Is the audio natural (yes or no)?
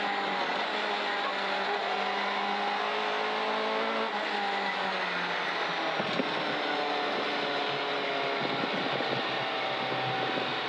yes